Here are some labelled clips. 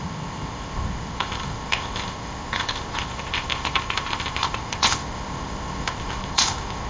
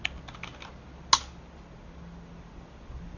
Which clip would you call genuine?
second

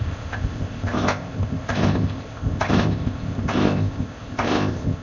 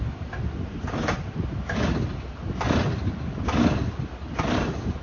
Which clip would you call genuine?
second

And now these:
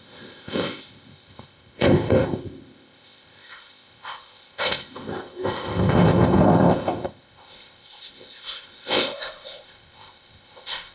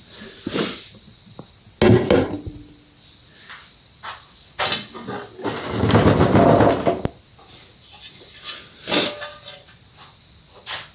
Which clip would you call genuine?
second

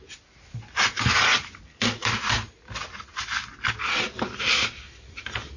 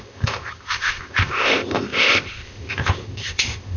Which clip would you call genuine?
first